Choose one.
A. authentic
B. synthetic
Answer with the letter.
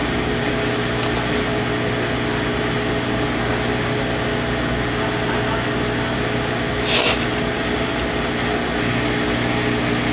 A